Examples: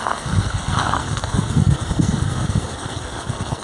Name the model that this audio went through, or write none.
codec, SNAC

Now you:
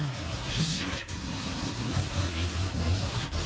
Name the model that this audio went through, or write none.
codec, SNAC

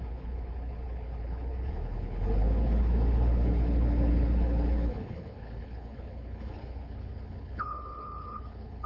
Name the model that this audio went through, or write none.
codec, HILCodec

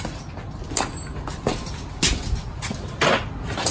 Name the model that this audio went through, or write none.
none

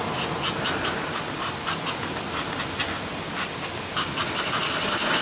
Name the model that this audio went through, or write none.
none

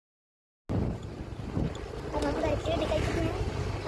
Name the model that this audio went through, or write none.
none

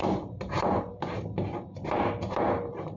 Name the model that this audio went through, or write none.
vocoder, BigVGAN v2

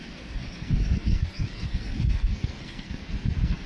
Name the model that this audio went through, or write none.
codec, SNAC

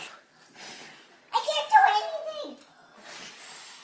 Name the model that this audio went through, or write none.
none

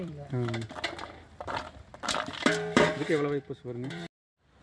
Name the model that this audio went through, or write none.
vocoder, BigVGAN v2